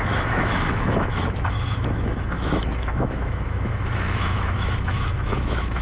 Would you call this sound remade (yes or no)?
yes